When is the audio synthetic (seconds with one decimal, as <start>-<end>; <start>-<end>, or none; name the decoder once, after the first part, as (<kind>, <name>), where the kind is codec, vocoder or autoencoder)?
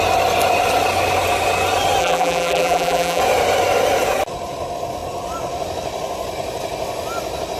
2.0-3.2 (vocoder, BigVGAN v2)